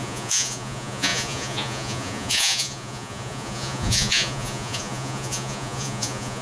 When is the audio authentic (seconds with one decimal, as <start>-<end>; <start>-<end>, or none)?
none